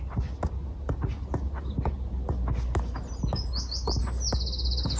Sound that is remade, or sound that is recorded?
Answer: recorded